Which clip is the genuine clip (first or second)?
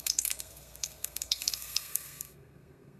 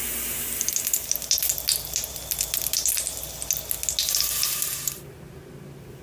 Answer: second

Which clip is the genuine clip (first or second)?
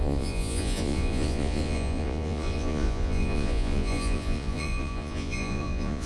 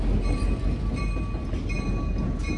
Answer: second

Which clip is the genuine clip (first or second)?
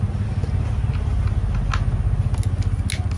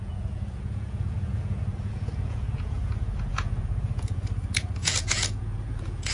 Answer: first